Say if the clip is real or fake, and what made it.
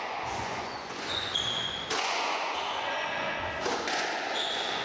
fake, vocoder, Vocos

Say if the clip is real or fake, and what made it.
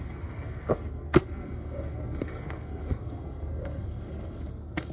fake, codec, SNAC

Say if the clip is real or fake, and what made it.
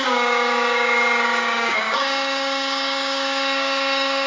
fake, codec, DAC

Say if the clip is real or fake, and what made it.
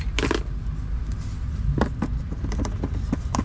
real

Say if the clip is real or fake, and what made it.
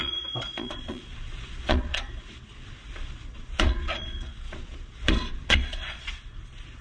fake, vocoder, Vocos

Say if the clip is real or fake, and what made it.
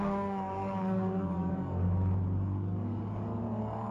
fake, codec, DAC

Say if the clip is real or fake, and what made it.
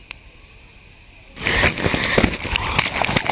real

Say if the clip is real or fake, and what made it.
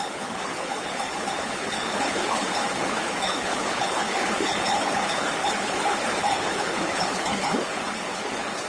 fake, codec, HILCodec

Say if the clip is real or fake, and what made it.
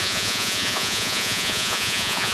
fake, vocoder, Vocos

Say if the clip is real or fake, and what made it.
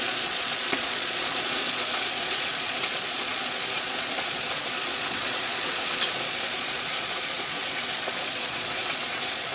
fake, vocoder, Vocos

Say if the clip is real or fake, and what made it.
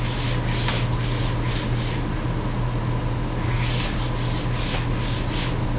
real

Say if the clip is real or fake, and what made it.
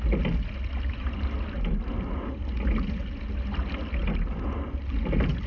real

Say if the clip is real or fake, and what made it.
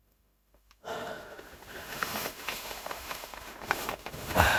fake, autoencoder, DAC-VAE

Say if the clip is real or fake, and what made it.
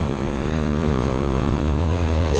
fake, vocoder, Vocos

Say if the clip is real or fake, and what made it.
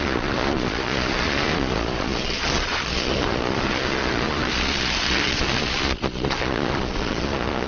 fake, vocoder, Vocos